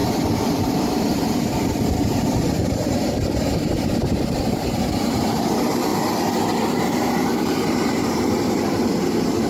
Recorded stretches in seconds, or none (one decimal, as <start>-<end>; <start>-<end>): 0.0-0.6; 3.7-4.4; 5.9-6.7

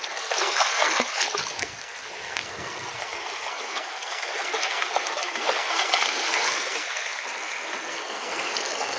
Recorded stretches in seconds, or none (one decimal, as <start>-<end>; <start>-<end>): none

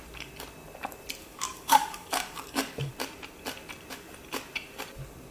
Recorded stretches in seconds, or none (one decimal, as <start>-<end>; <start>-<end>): 0.0-1.2; 2.9-5.3

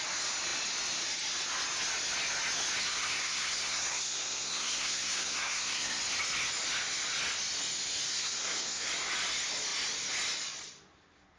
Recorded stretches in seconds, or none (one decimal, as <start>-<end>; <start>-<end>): 0.0-2.9; 6.0-8.1; 8.9-11.4

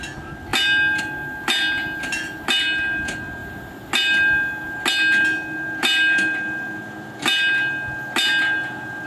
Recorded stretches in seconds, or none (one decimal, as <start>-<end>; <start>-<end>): 0.0-9.1

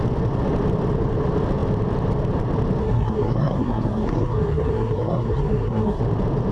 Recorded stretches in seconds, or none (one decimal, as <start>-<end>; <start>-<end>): 0.0-2.8; 6.0-6.5